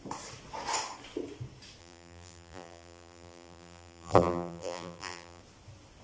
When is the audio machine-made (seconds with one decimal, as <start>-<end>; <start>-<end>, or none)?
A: 1.8-5.4